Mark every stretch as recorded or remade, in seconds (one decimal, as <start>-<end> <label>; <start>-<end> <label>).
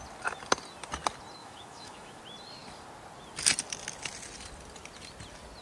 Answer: 0.0-1.4 recorded; 1.4-2.2 remade; 2.2-5.6 recorded